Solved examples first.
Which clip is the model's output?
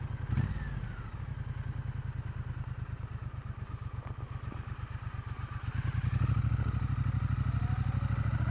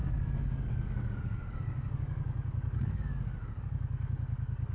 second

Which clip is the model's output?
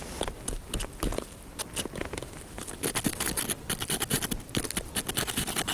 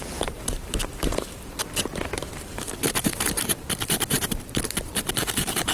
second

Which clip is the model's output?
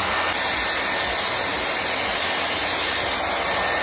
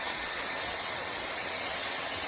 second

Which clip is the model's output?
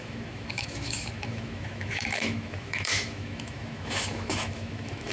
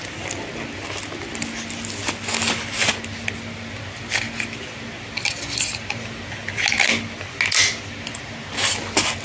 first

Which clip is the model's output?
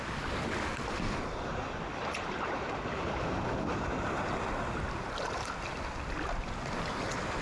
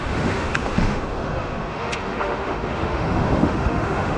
second